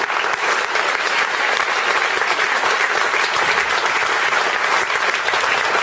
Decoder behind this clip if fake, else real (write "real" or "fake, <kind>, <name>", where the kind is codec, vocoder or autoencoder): fake, vocoder, BigVGAN v2